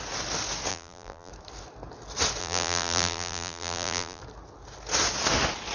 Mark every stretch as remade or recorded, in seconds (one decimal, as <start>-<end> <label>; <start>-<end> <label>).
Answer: 0.0-0.7 recorded; 0.7-1.3 remade; 1.3-2.4 recorded; 2.4-4.2 remade; 4.2-5.7 recorded